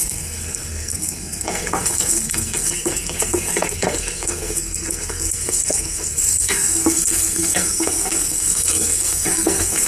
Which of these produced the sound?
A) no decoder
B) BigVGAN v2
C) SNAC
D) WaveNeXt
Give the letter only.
C